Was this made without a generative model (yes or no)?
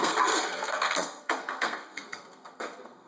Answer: no